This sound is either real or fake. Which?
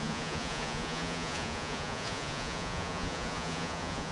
fake